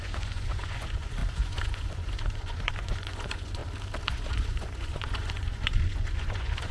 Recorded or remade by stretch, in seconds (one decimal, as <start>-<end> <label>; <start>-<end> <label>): 0.0-3.6 remade; 3.6-4.1 recorded; 4.1-6.7 remade